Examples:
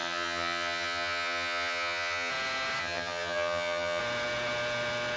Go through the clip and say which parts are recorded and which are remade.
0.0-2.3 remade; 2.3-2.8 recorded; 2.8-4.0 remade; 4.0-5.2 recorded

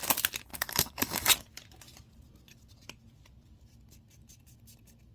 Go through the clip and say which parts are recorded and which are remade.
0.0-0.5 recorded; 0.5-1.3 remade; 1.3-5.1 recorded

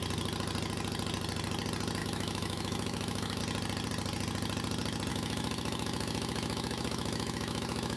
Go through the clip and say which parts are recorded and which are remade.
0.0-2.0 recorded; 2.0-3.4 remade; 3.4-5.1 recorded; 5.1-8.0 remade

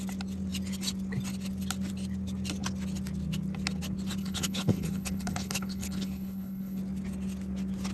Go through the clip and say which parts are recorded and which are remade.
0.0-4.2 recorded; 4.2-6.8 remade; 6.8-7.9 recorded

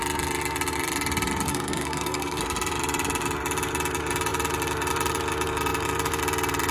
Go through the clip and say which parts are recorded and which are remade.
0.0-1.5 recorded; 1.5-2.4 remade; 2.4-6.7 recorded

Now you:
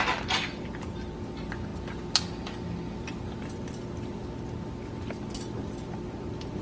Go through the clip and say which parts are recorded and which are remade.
0.0-6.6 recorded